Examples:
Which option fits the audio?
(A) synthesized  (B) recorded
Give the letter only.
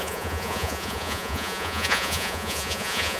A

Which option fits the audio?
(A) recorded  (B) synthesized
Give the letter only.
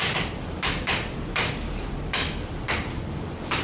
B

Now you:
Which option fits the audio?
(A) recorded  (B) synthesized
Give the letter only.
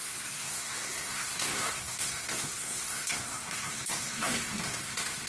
B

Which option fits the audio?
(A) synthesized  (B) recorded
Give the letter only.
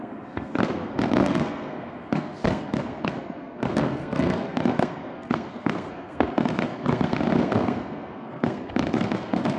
A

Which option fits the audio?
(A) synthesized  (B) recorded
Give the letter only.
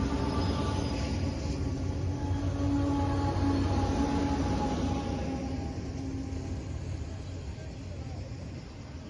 B